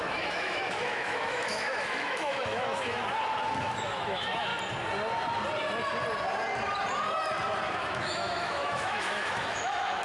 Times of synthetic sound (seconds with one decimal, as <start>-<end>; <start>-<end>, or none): 0.0-3.0; 3.6-4.5; 7.7-10.0